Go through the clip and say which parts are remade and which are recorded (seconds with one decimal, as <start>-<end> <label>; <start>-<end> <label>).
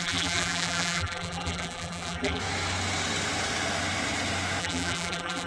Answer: 0.0-2.4 remade; 2.4-4.6 recorded; 4.6-5.5 remade